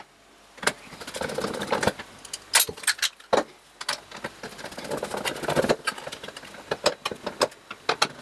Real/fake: real